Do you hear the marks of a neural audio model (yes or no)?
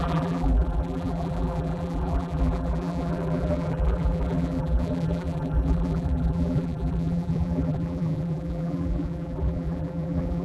yes